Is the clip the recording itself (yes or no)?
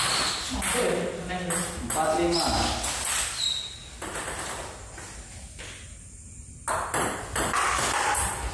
yes